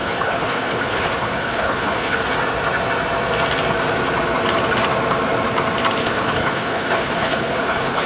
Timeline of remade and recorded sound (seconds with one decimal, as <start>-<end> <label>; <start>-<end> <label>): 0.0-2.2 remade; 2.2-6.0 recorded; 6.0-8.1 remade

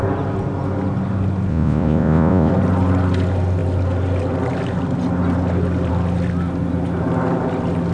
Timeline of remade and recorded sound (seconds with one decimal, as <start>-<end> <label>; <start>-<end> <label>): 0.0-1.5 recorded; 1.5-2.5 remade; 2.5-7.9 recorded

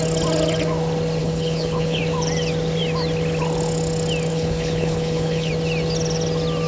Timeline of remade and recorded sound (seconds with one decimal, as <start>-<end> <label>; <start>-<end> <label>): 0.0-1.2 recorded; 1.2-2.0 remade; 2.0-4.3 recorded; 4.3-5.5 remade; 5.5-6.7 recorded

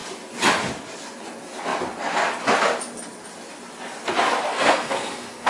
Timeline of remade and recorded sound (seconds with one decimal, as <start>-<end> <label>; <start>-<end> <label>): 0.0-4.5 recorded; 4.5-5.5 remade

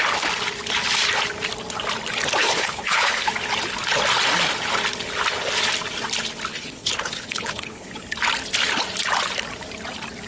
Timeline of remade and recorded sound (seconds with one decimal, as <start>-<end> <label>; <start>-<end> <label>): 0.0-2.4 recorded; 2.4-3.3 remade; 3.3-6.5 recorded; 6.5-8.0 remade; 8.0-10.3 recorded

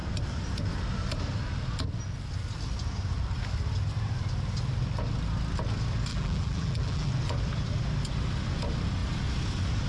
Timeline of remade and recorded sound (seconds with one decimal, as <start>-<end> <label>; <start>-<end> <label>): 0.0-6.1 recorded; 6.1-7.1 remade; 7.1-9.9 recorded